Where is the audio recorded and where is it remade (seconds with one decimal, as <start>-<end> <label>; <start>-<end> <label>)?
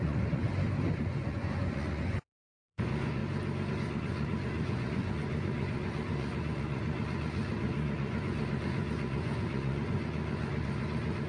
0.0-0.4 remade; 0.4-1.0 recorded; 1.0-3.2 remade; 3.2-3.7 recorded; 3.7-11.3 remade